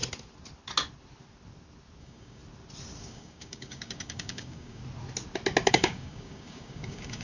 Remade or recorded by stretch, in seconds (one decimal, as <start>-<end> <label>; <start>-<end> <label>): 0.0-2.0 recorded; 2.0-2.4 remade; 2.4-3.0 recorded; 3.0-4.8 remade; 4.8-5.7 recorded; 5.7-7.2 remade